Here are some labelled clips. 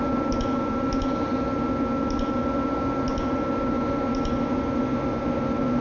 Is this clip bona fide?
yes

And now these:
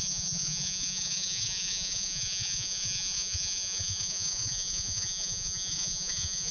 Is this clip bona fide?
no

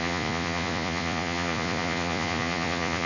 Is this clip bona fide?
no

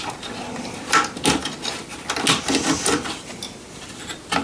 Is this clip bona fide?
yes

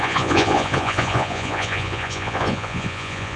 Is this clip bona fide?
no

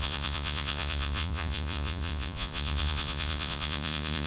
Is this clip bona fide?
no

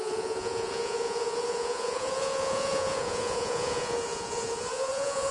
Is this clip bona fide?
no